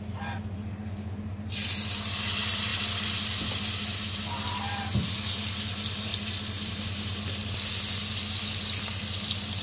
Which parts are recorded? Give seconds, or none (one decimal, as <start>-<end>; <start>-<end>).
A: 0.0-9.6